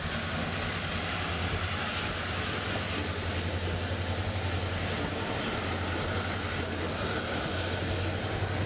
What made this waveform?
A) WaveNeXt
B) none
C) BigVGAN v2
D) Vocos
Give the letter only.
B